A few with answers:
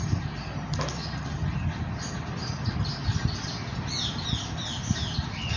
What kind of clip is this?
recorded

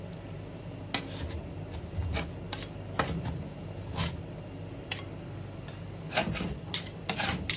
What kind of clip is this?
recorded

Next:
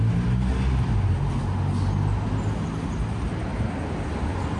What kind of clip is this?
recorded